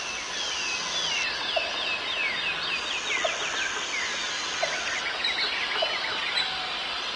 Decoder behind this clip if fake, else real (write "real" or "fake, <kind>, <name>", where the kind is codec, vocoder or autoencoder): real